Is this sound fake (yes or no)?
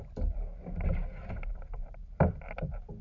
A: no